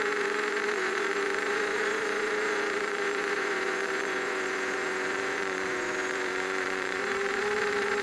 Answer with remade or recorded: remade